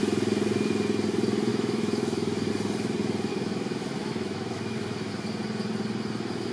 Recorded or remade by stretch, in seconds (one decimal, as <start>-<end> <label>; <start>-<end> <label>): 0.0-1.5 recorded; 1.5-2.5 remade; 2.5-3.3 recorded; 3.3-5.1 remade; 5.1-6.5 recorded